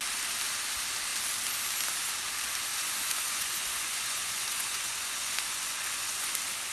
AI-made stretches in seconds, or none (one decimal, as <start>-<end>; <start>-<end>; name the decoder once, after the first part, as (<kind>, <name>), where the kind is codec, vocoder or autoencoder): 2.7-6.3 (vocoder, Vocos)